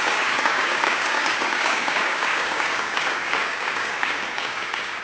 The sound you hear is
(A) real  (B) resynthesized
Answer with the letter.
B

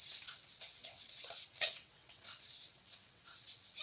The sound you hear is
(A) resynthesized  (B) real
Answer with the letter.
A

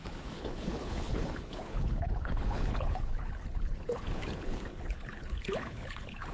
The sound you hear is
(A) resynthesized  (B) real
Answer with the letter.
A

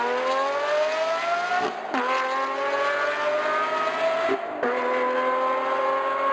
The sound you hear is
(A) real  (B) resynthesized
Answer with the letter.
A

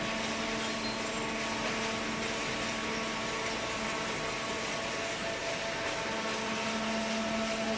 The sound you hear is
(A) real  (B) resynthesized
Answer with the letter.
A